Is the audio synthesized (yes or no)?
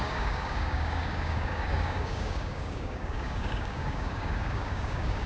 yes